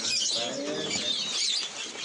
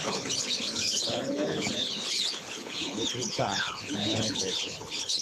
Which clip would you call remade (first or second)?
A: second